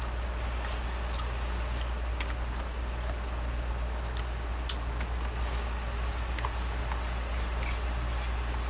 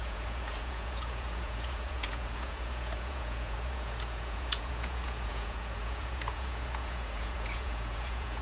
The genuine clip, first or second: first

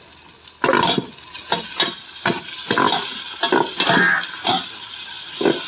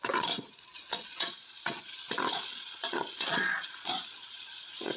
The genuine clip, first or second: first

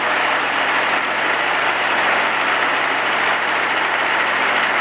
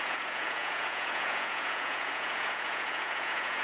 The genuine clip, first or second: first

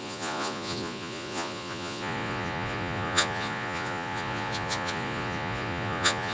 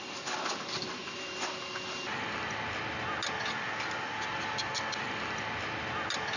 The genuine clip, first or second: second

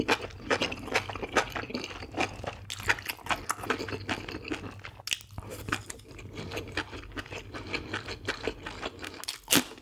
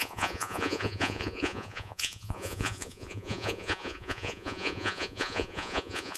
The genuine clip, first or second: first